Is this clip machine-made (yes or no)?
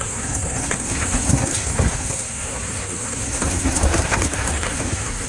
yes